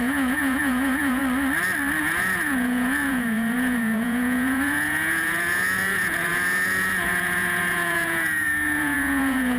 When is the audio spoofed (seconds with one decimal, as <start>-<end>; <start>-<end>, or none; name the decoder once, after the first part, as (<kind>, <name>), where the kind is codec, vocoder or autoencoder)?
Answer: 0.0-1.2 (vocoder, Vocos); 2.0-9.6